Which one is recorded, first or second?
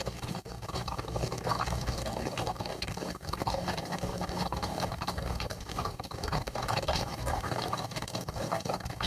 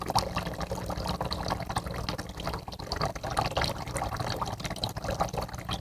second